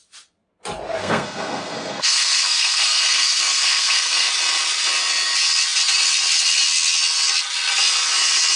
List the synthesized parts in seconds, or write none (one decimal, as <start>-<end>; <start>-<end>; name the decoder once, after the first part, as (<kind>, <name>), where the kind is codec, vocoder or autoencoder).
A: 1.0-4.3 (codec, SNAC)